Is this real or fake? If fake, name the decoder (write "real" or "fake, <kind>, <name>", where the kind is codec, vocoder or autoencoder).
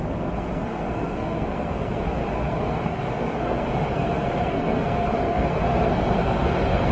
fake, codec, SNAC